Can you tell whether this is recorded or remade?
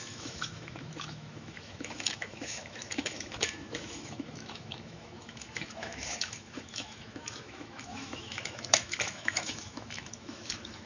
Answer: remade